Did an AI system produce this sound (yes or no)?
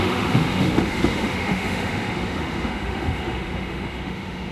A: yes